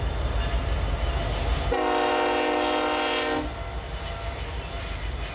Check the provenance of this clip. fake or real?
real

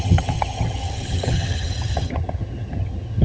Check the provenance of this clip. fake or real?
fake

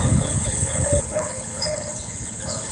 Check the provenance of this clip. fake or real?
fake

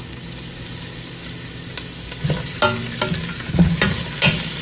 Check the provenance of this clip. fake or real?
real